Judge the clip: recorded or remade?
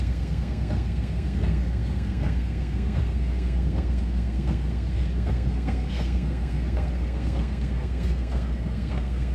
remade